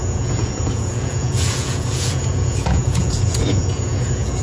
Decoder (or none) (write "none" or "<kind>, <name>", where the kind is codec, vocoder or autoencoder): vocoder, Vocos